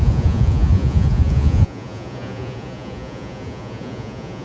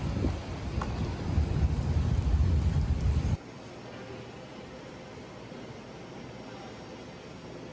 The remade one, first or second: first